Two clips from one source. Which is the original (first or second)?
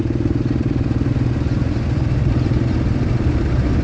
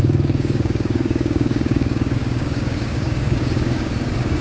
first